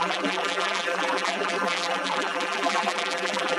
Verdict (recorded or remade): remade